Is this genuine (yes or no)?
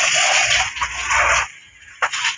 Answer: yes